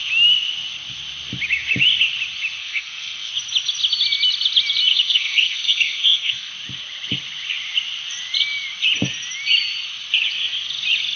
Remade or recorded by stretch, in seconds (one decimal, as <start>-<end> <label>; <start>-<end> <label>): 0.0-2.6 recorded; 2.6-3.3 remade; 3.3-4.9 recorded; 4.9-6.5 remade; 6.5-11.2 recorded